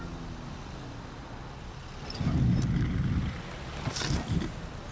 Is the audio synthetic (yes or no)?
no